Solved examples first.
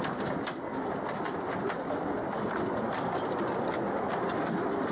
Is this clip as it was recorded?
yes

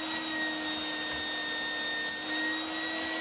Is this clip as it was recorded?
yes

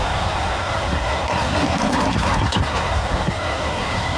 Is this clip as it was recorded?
no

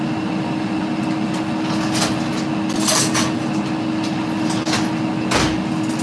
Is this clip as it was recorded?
yes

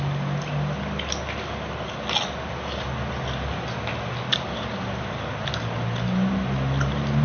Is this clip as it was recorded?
yes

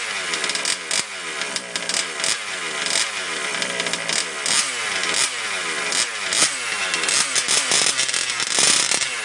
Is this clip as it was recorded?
yes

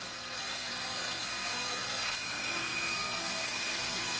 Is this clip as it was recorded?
no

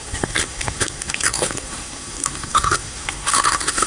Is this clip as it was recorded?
no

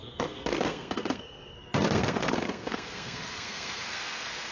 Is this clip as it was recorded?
no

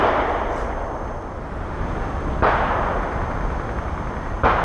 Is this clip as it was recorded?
yes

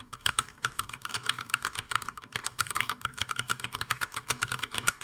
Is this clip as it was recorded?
no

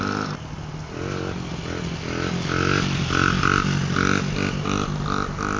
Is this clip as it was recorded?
yes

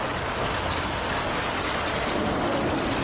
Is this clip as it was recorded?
yes